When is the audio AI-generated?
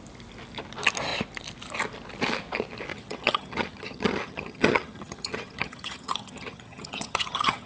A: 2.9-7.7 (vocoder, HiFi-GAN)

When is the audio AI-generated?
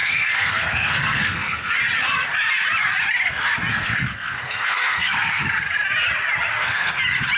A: 0.0-1.7 (codec, SNAC); 3.7-5.4; 6.5-7.0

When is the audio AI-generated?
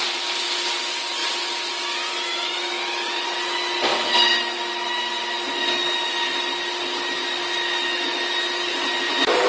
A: none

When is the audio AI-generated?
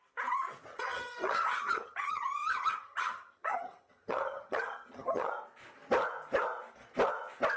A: 0.7-5.3 (vocoder, HiFi-GAN)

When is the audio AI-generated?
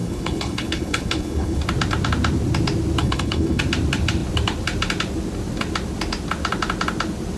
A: 0.0-1.6 (codec, HILCodec); 3.0-3.6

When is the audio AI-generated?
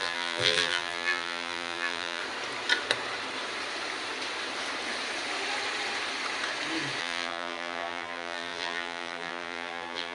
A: 0.0-2.2 (vocoder, BigVGAN v2); 7.0-10.1